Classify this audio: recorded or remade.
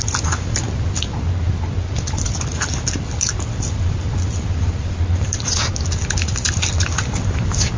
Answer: recorded